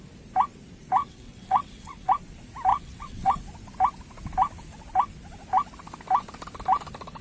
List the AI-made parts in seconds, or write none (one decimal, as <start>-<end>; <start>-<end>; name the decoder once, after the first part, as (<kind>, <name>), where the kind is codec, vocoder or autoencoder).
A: 1.0-2.1 (vocoder, WaveNeXt); 2.7-3.4